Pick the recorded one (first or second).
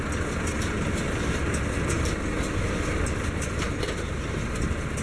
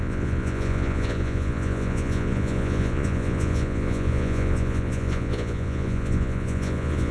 first